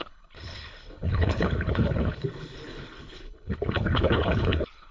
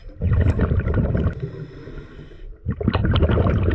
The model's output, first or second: first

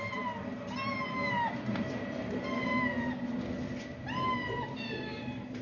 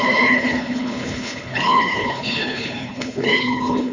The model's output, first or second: second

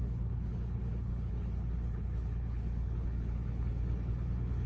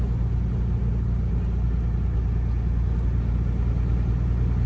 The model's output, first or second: first